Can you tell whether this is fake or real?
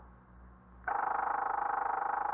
real